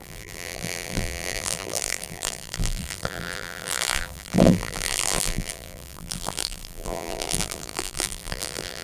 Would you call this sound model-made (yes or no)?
yes